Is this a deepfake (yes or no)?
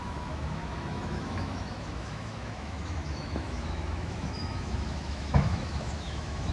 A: yes